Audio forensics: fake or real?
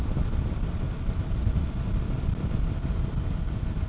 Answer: real